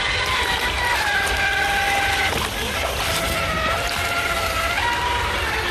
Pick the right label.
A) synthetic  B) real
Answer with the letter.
B